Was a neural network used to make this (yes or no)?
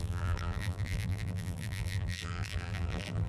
yes